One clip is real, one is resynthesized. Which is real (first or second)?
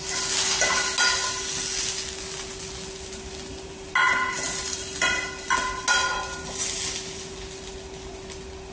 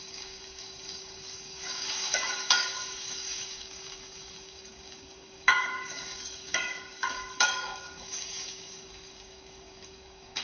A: first